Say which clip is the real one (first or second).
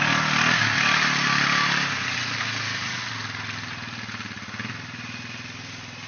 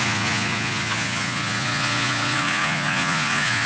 first